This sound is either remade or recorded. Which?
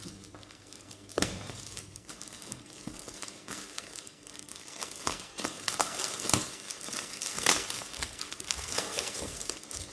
remade